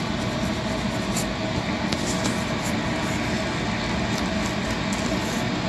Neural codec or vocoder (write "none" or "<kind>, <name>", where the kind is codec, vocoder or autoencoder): none